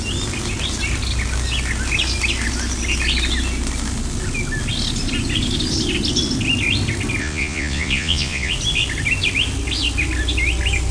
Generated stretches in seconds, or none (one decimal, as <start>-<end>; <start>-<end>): 7.2-8.5